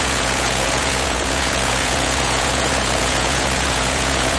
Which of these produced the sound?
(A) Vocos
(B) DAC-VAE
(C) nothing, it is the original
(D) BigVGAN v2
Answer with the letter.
A